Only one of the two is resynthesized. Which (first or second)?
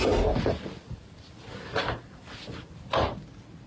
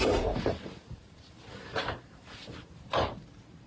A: second